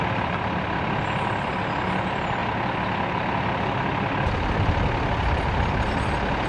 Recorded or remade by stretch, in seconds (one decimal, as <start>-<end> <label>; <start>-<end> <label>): 0.0-6.5 recorded